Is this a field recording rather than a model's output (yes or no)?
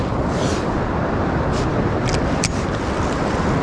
yes